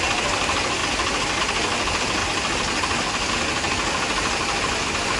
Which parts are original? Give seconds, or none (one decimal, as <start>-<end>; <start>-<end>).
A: 0.0-5.2